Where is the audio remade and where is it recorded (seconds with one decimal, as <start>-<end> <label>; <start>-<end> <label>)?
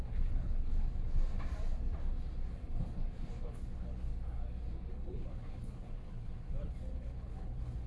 0.0-0.7 remade; 0.7-3.4 recorded; 3.4-4.1 remade; 4.1-4.9 recorded; 4.9-7.9 remade